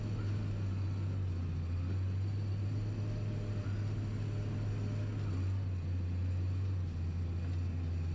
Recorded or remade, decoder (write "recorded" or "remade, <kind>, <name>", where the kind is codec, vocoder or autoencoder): recorded